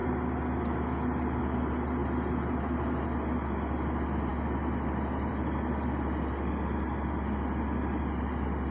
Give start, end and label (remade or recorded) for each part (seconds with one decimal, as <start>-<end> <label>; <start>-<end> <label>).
0.0-8.7 recorded